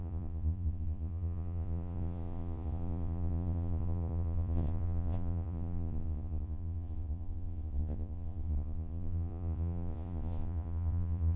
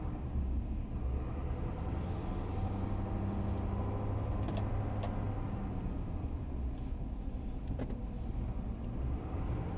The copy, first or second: first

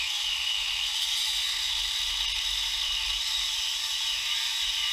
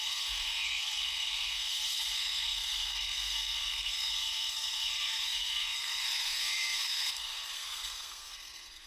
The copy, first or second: second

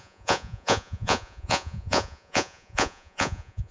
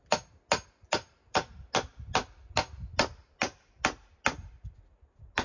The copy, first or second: first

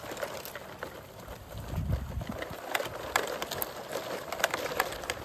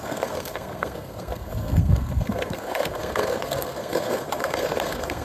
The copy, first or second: second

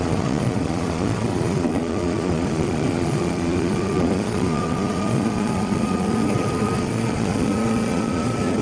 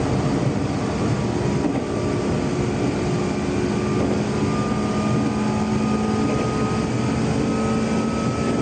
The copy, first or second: first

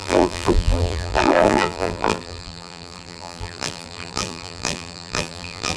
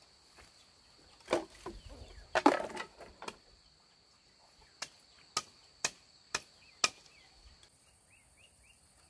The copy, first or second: first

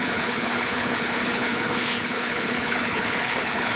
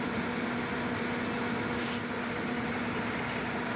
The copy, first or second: first